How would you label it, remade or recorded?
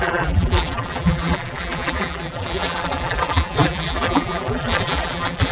remade